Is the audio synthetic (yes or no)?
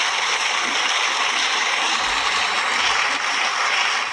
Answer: no